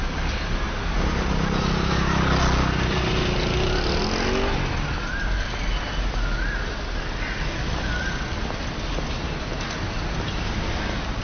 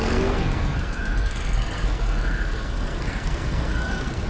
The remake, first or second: second